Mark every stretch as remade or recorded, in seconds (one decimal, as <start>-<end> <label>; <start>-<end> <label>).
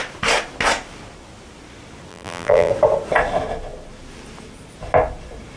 0.0-2.1 recorded; 2.1-2.7 remade; 2.7-5.6 recorded